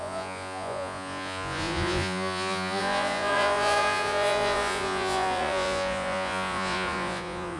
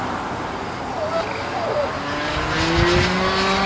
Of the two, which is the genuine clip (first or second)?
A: second